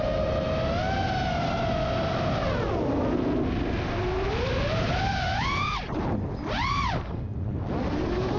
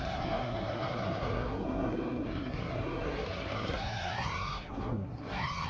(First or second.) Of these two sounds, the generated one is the second